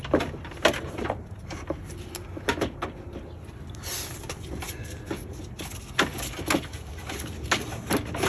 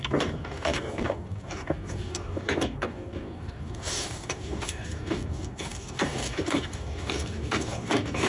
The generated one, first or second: second